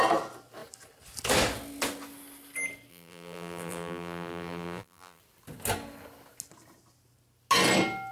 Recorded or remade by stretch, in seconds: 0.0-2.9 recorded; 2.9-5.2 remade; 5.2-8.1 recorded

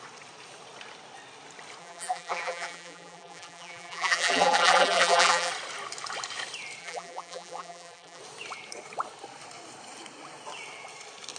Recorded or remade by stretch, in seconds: 0.0-1.8 recorded; 1.8-5.5 remade; 5.5-6.8 recorded; 6.8-8.2 remade; 8.2-11.4 recorded

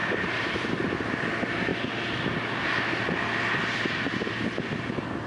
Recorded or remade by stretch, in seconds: 0.0-0.9 remade; 0.9-5.3 recorded

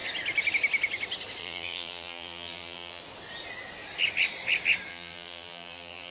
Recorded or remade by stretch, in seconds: 0.0-1.4 recorded; 1.4-3.0 remade; 3.0-4.9 recorded; 4.9-6.1 remade

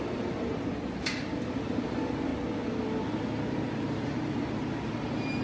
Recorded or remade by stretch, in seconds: 0.0-2.3 remade; 2.3-3.7 recorded; 3.7-5.4 remade

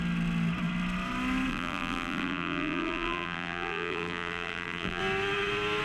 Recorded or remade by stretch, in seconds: 0.0-1.5 recorded; 1.5-5.0 remade; 5.0-5.8 recorded